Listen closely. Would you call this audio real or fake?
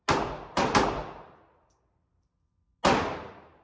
real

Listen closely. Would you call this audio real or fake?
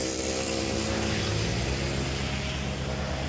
real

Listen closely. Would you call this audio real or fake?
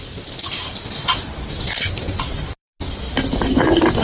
real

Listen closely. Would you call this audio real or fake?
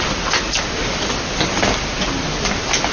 real